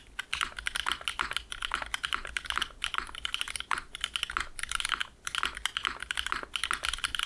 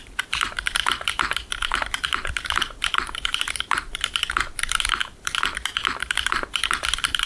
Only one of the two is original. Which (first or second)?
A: first